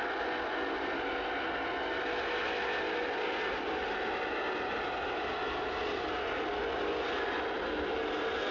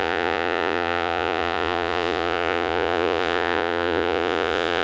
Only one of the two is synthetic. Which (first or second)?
second